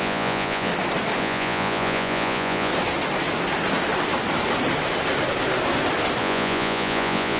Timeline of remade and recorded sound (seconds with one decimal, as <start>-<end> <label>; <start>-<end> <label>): 0.0-0.7 remade; 0.7-1.2 recorded; 1.2-2.7 remade; 2.7-6.2 recorded; 6.2-7.4 remade

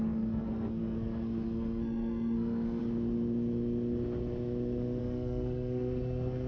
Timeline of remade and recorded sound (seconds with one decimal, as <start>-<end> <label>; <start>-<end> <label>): 0.0-2.8 remade; 2.8-5.0 recorded; 5.0-6.5 remade